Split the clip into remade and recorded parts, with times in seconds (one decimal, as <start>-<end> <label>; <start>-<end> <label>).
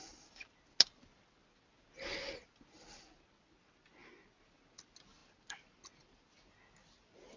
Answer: 0.0-7.4 recorded